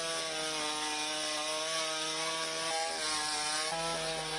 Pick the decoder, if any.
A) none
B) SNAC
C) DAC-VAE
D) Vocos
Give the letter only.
A